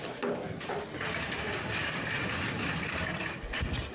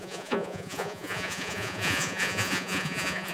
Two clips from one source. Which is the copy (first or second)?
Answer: second